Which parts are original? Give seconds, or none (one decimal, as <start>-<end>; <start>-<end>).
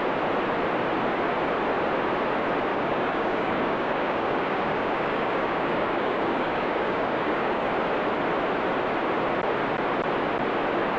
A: 0.0-2.7; 7.7-11.0